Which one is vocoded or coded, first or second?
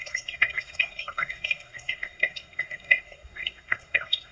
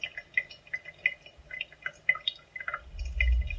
first